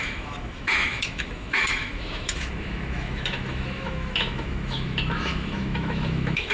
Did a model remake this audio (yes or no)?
yes